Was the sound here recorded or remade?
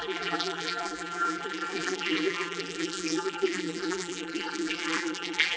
remade